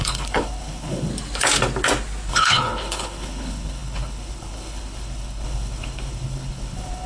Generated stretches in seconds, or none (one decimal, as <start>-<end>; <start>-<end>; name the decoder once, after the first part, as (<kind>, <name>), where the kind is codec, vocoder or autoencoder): 0.0-1.1 (codec, HILCodec); 2.3-7.1